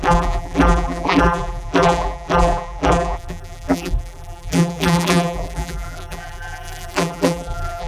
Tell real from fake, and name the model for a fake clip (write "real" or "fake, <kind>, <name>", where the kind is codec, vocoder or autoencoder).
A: fake, vocoder, BigVGAN v2